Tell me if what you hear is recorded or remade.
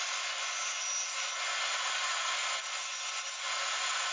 recorded